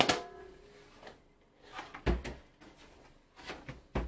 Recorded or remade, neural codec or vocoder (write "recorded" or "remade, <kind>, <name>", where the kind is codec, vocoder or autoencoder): recorded